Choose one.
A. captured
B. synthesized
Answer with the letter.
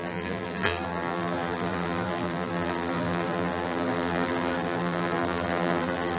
B